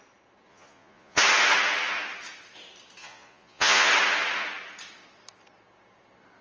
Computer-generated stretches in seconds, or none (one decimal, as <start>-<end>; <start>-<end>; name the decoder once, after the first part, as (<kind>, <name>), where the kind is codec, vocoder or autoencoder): 0.5-1.2 (vocoder, Vocos); 3.0-3.9